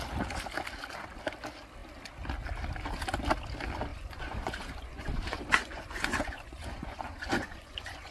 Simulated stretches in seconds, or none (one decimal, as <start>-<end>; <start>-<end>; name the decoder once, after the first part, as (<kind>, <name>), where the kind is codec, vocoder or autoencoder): 3.9-8.1 (vocoder, Vocos)